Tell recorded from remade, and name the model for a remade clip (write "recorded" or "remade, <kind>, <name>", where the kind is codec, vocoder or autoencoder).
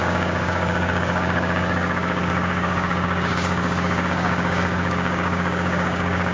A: remade, codec, DAC